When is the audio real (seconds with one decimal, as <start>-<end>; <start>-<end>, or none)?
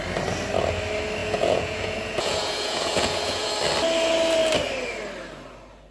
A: 0.0-1.2; 3.5-5.9